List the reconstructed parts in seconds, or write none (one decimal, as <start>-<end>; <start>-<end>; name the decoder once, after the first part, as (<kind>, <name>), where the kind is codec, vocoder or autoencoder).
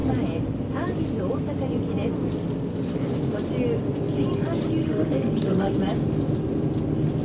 4.8-5.7 (autoencoder, DAC-VAE)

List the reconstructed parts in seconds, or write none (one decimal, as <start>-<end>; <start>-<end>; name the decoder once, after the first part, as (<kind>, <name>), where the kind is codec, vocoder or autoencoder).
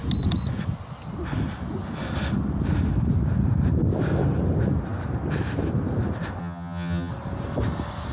6.4-7.1 (vocoder, HiFi-GAN)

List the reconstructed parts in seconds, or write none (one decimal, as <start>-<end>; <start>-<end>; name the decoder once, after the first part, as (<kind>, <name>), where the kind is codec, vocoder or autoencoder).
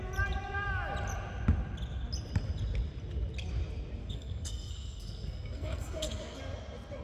4.0-6.4 (codec, SNAC)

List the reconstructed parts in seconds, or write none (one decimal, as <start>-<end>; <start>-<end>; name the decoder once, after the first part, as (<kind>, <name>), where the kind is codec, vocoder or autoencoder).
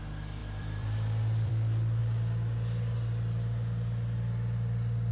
0.4-1.5 (vocoder, BigVGAN v2)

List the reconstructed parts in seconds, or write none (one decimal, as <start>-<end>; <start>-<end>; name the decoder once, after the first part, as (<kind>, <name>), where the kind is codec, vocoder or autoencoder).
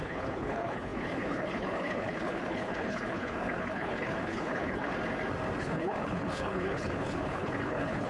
0.0-4.9 (codec, HILCodec); 5.6-8.1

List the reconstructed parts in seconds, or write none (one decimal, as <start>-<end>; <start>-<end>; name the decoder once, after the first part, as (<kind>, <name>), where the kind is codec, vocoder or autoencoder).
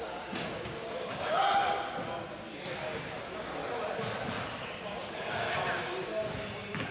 0.0-1.4 (codec, DAC); 3.2-3.6; 4.6-6.1